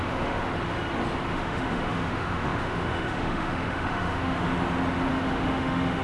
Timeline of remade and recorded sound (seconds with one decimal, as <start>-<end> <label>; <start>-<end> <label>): 0.0-0.4 remade; 0.4-1.3 recorded; 1.3-4.5 remade; 4.5-5.1 recorded; 5.1-6.0 remade